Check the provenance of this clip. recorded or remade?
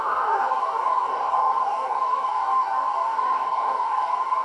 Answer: remade